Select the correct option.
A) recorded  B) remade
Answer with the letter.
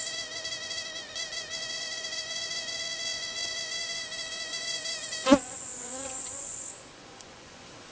B